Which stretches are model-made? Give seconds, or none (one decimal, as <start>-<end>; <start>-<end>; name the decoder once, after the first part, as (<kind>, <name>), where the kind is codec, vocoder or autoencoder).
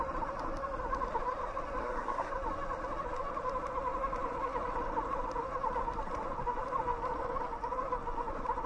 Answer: 1.8-2.3 (codec, SNAC)